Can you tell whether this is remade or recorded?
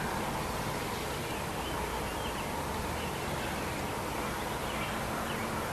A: recorded